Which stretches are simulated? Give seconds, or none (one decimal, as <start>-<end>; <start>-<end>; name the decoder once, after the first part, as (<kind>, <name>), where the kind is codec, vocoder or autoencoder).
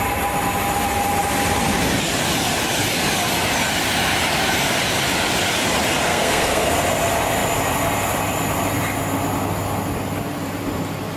6.1-6.7 (codec, SNAC)